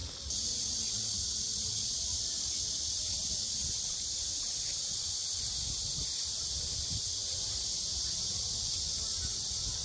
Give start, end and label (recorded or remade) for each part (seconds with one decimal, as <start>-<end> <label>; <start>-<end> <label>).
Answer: 0.0-9.8 recorded